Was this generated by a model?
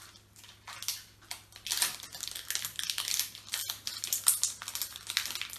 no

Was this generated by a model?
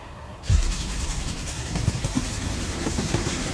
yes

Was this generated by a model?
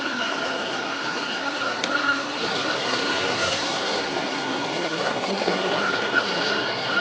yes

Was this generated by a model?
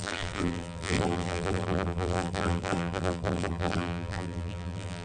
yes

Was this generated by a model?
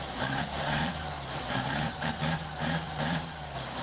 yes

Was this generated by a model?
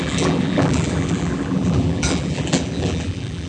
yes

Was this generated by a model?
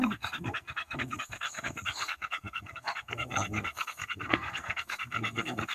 yes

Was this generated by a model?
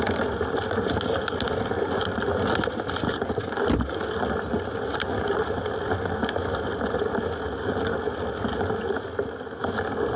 no